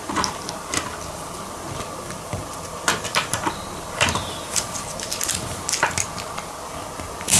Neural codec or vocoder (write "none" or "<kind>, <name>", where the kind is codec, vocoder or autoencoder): vocoder, BigVGAN v2